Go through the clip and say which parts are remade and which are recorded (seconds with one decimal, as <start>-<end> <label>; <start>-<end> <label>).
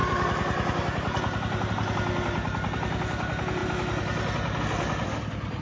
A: 0.0-5.6 recorded